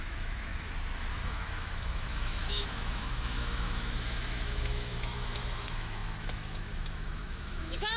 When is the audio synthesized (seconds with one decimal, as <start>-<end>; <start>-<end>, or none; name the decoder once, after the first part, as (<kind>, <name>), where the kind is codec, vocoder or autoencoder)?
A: 0.0-0.5 (autoencoder, DAC-VAE); 1.1-8.0